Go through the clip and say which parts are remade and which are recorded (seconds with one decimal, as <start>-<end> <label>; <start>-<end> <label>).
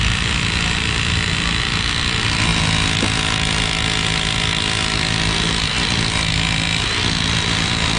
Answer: 0.0-8.0 recorded